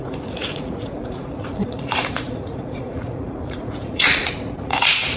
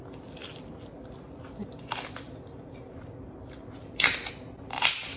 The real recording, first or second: second